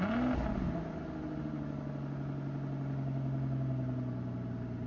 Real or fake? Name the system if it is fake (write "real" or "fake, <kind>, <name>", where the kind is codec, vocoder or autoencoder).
real